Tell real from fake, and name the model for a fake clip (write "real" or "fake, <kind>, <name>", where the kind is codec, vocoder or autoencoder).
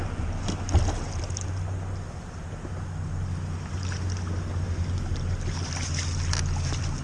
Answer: real